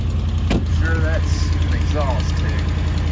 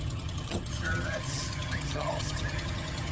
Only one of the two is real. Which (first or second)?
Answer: first